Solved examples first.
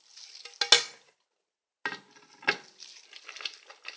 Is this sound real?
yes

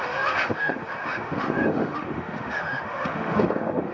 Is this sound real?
no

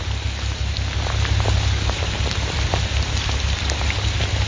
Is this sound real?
yes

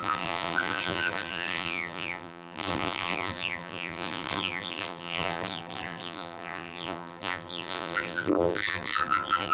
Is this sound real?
no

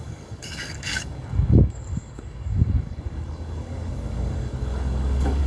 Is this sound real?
no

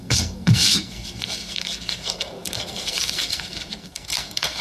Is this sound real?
no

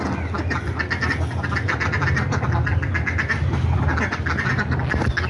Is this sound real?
yes